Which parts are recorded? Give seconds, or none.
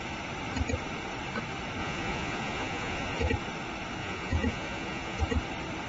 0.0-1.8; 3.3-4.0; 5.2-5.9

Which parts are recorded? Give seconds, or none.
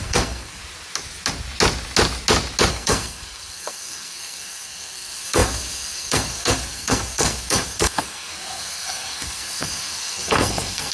0.6-2.7